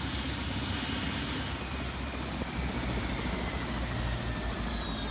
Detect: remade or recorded recorded